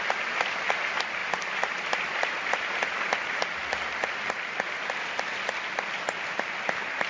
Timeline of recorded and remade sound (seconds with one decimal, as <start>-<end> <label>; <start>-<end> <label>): 0.0-7.1 recorded

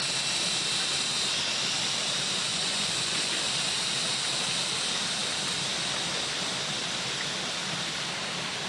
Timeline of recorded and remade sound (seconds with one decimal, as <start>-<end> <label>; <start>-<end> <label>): 0.0-2.5 recorded; 2.5-3.4 remade; 3.4-8.7 recorded

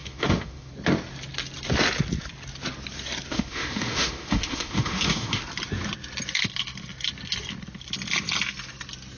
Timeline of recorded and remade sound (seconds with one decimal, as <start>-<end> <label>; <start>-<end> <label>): 0.0-0.7 remade; 0.7-3.3 recorded; 3.3-5.4 remade; 5.4-9.2 recorded

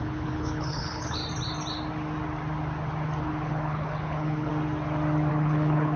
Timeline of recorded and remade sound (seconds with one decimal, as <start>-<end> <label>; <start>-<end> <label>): 0.0-1.2 remade; 1.2-3.2 recorded; 3.2-4.5 remade; 4.5-5.3 recorded; 5.3-6.0 remade

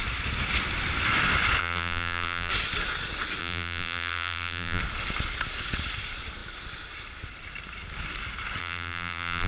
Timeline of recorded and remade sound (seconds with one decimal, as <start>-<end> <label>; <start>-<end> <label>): 0.0-1.6 recorded; 1.6-2.5 remade; 2.5-3.4 recorded; 3.4-4.8 remade; 4.8-8.6 recorded; 8.6-9.5 remade

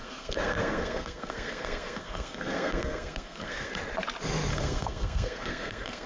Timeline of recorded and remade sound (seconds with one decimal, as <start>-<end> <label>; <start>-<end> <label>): 0.0-3.7 remade; 3.7-4.5 recorded; 4.5-6.1 remade

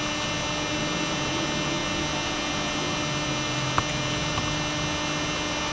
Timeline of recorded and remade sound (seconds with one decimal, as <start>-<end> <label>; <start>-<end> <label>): 0.0-5.7 recorded

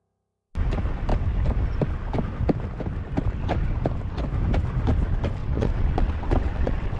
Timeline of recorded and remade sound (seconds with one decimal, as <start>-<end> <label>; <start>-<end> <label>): 0.0-5.4 recorded; 5.4-7.0 remade